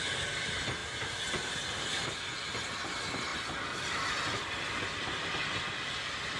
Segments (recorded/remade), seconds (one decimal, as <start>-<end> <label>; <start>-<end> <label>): 0.0-6.4 recorded